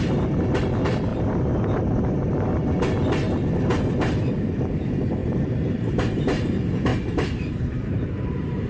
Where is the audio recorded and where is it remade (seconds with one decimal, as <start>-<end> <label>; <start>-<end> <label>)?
0.0-1.1 recorded; 1.1-2.5 remade; 2.5-5.2 recorded; 5.2-6.2 remade; 6.2-6.9 recorded; 6.9-8.7 remade